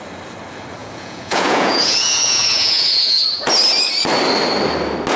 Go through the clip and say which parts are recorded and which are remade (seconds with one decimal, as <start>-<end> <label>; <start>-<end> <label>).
0.0-0.8 recorded; 0.8-3.5 remade; 3.5-5.2 recorded